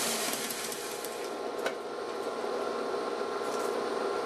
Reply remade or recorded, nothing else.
recorded